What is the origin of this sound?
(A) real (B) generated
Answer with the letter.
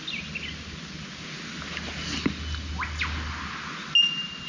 A